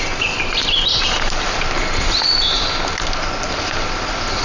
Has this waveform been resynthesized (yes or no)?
no